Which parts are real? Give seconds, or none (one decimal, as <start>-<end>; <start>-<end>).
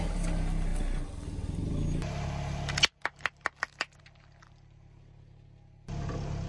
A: 0.0-6.5